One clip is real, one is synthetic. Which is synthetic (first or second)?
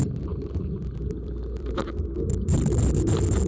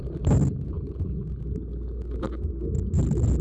first